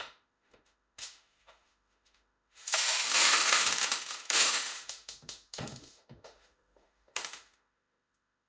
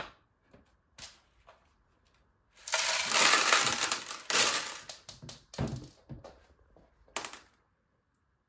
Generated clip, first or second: first